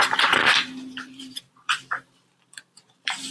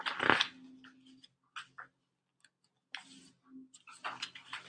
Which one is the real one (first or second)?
second